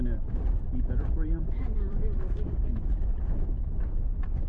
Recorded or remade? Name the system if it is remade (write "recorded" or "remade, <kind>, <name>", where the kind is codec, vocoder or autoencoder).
remade, vocoder, BigVGAN v2